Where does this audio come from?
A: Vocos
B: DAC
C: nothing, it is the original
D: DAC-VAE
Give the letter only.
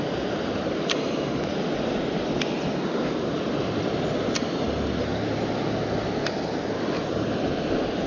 C